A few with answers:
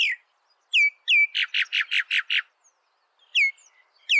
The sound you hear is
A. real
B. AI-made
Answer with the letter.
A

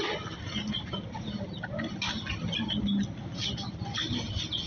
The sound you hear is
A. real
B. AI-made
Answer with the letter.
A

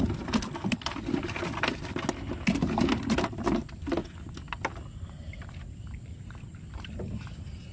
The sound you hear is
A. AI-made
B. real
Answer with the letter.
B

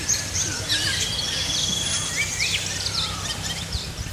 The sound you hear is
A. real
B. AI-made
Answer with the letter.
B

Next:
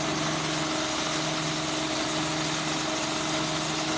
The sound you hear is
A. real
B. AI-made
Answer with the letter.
A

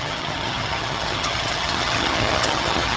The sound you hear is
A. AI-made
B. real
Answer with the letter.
A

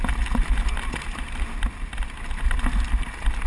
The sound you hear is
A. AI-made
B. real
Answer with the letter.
B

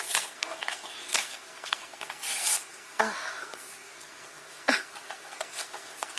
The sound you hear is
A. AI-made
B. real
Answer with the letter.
A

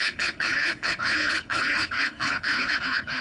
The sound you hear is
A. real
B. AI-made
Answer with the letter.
B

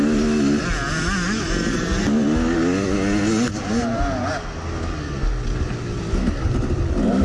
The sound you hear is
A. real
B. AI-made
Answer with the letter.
A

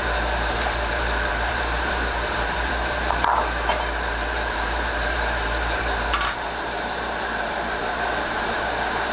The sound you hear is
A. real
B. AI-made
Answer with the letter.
B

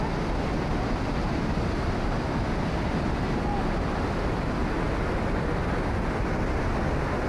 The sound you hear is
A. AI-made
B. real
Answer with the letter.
B